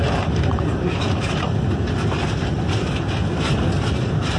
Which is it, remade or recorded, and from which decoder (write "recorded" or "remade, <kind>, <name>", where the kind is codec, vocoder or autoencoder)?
recorded